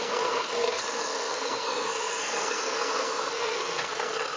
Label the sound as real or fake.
fake